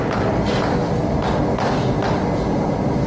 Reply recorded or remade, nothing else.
recorded